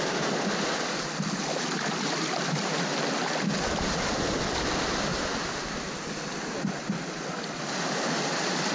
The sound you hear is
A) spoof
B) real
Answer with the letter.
B